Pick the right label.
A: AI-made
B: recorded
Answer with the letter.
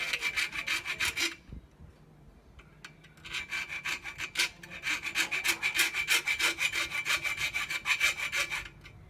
B